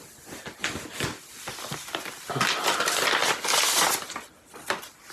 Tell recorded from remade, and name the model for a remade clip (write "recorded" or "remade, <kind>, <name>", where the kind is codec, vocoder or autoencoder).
recorded